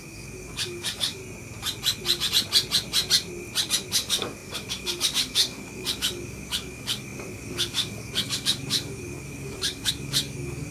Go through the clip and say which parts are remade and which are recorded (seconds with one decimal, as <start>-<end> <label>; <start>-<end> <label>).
0.0-1.2 remade; 1.2-3.9 recorded; 3.9-10.7 remade